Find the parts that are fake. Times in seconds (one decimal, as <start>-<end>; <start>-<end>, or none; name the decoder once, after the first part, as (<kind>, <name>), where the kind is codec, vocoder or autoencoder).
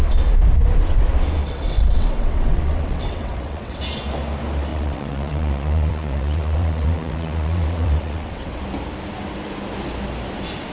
1.4-3.8 (vocoder, WaveNeXt); 4.7-8.6